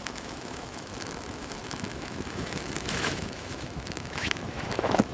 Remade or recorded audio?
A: remade